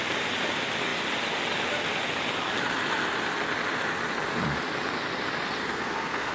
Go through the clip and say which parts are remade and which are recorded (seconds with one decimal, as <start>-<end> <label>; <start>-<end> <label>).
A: 0.0-5.6 recorded; 5.6-6.3 remade